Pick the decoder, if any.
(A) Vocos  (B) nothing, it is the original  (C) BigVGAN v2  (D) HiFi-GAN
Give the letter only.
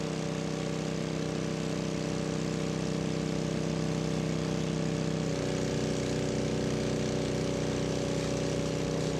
B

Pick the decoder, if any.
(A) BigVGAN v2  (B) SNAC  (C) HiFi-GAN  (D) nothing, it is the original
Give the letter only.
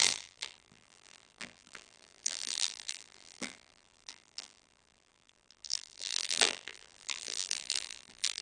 A